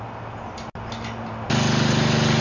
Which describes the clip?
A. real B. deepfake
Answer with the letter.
A